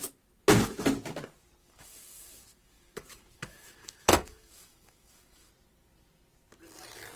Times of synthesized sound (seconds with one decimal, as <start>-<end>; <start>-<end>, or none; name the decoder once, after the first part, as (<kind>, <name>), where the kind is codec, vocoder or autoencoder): 1.6-5.5 (autoencoder, DAC-VAE)